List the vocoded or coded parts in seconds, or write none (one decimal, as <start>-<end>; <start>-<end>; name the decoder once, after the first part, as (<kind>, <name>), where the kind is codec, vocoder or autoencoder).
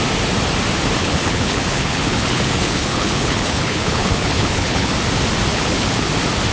1.0-4.9 (codec, HILCodec); 5.5-6.1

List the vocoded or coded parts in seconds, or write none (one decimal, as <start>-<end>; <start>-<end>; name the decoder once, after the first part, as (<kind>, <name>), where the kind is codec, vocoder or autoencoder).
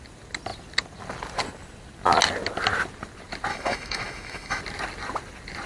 3.5-4.6 (autoencoder, DAC-VAE)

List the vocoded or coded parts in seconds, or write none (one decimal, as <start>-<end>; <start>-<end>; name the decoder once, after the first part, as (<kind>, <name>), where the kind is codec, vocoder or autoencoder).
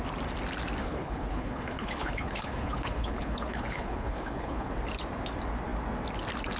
0.8-4.7 (codec, HILCodec)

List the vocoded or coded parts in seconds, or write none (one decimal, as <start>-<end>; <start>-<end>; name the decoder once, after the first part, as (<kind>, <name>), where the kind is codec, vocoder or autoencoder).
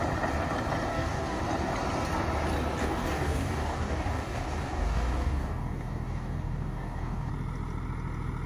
0.9-1.4 (codec, DAC); 2.8-7.3